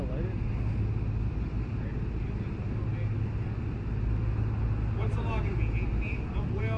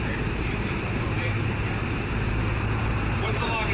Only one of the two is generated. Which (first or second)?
second